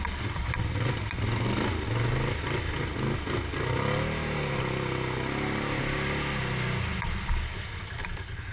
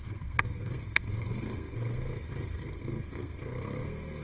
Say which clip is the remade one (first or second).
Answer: second